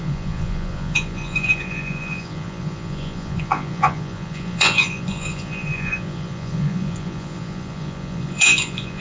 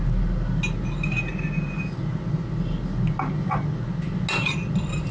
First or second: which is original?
second